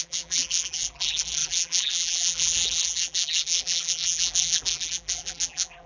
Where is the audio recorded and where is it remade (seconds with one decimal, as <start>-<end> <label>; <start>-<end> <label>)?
0.0-5.9 remade